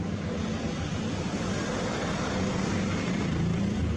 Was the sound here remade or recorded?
remade